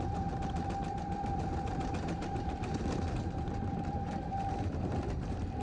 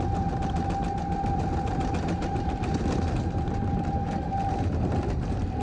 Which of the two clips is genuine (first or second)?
second